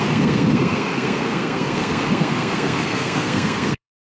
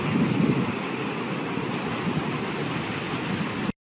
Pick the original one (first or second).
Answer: second